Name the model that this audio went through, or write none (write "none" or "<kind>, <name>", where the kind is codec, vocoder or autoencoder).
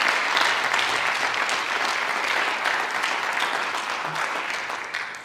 none